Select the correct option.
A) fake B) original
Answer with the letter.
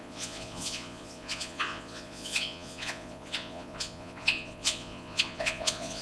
A